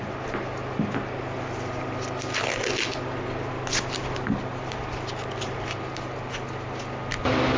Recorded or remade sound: recorded